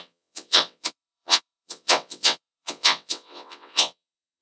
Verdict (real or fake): fake